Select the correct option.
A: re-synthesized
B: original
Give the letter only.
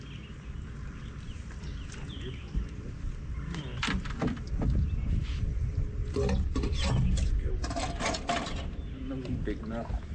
B